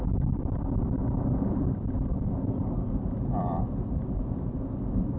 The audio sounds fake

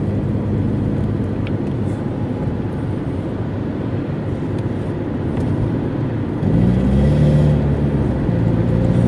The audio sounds real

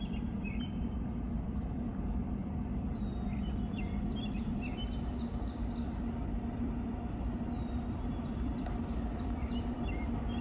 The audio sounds fake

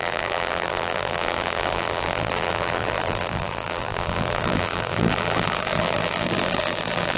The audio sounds fake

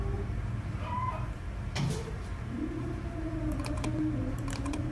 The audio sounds fake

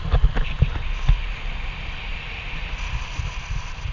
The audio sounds real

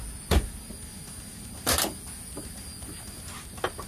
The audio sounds real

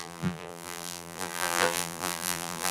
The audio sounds fake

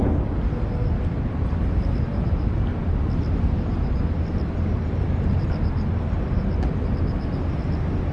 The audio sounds real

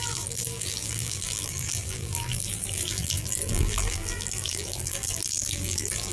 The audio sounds fake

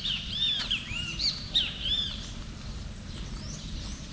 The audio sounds fake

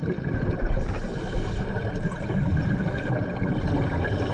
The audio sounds real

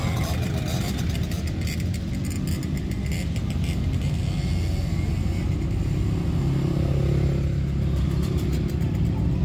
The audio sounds real